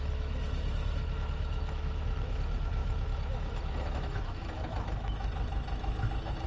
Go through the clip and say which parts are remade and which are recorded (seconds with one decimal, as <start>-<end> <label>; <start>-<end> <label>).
0.0-6.5 remade